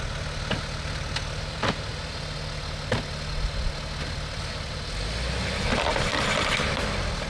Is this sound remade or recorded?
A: recorded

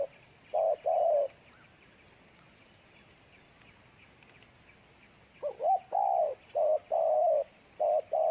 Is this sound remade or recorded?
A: recorded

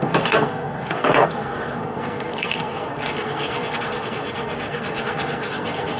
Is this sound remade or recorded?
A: remade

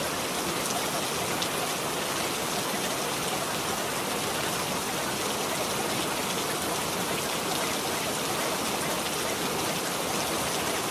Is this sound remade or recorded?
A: recorded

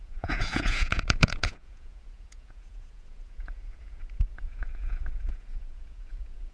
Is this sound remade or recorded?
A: remade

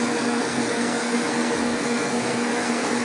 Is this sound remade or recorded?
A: remade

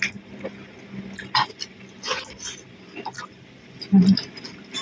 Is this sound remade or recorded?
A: recorded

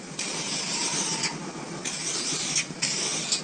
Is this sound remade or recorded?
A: recorded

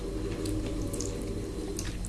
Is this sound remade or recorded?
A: recorded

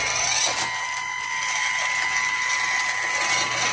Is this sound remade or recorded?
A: recorded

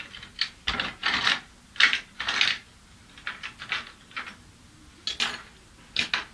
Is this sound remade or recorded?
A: recorded